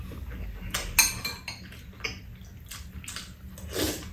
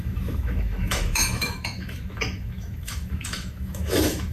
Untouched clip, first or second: first